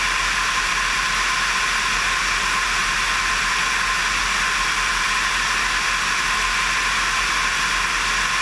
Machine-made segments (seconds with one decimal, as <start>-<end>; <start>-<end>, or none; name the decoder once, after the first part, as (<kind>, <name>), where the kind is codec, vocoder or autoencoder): none